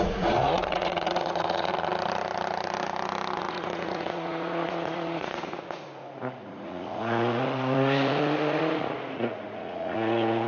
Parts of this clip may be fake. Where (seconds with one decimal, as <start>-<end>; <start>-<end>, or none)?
0.0-1.7; 3.4-10.5